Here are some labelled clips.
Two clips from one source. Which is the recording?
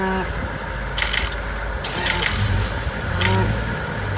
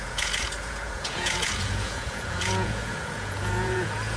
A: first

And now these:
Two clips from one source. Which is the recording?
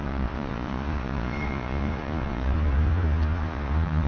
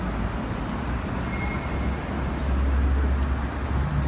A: second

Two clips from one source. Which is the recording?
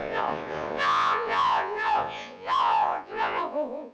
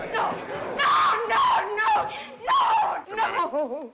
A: second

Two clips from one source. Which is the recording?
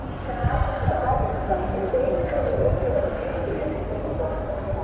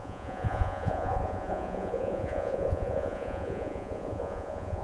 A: first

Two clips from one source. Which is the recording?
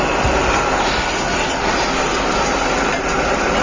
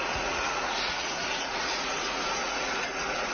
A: first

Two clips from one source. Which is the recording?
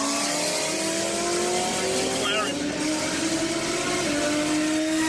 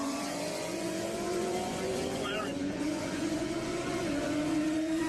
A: first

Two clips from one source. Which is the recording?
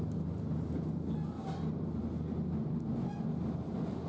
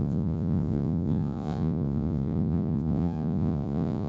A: first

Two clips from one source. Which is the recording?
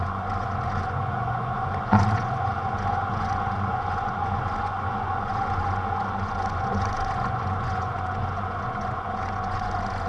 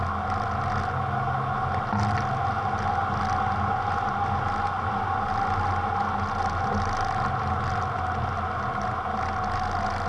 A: second